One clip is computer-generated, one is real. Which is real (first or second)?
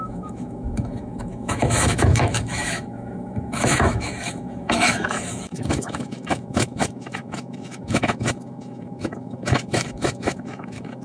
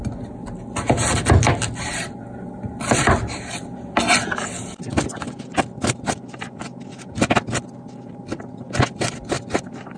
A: second